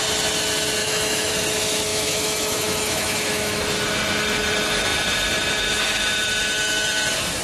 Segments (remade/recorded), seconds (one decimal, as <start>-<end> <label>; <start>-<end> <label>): 0.0-0.8 recorded; 0.8-1.3 remade; 1.3-1.9 recorded; 1.9-3.6 remade; 3.6-7.4 recorded